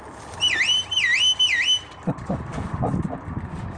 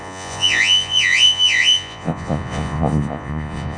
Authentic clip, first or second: first